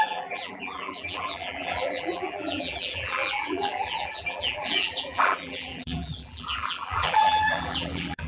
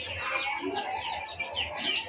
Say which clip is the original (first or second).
second